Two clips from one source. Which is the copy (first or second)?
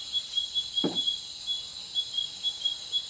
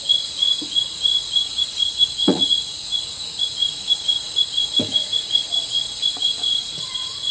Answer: second